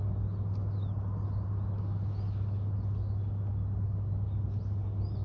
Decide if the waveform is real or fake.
real